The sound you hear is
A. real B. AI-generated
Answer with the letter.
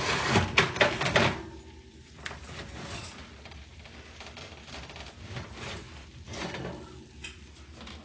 A